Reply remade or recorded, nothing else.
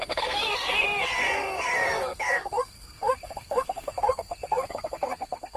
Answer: remade